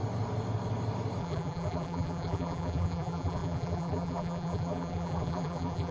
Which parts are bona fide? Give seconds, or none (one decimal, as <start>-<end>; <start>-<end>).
0.0-1.2